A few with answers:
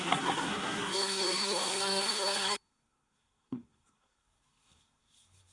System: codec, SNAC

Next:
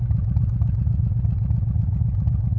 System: none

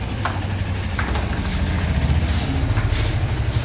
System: none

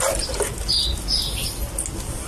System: none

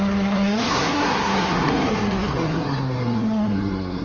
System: codec, SNAC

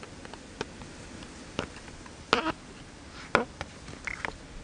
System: none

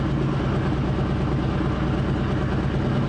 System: none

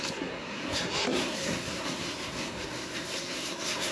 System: codec, SNAC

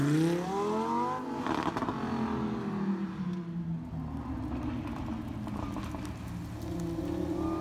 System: none